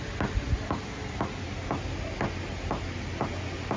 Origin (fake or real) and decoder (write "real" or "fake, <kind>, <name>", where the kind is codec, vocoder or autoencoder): real